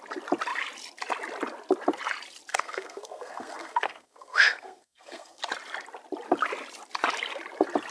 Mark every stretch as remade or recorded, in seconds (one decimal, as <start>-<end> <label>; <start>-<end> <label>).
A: 0.0-2.5 recorded; 2.5-5.4 remade; 5.4-7.9 recorded